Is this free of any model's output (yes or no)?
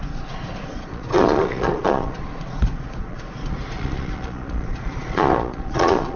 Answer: no